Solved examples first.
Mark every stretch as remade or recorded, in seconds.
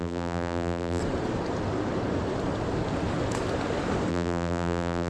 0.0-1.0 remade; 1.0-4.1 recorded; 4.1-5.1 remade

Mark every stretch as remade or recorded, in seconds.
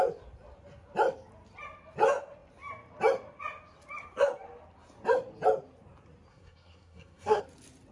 0.0-6.3 recorded; 6.3-7.4 remade; 7.4-7.9 recorded